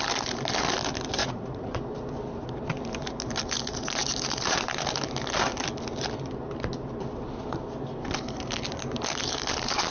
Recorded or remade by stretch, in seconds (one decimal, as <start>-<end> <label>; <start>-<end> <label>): 0.0-1.2 recorded; 1.2-1.8 remade; 1.8-9.9 recorded